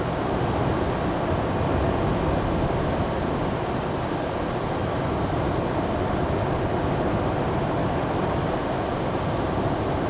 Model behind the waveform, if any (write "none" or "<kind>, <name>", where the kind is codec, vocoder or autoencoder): none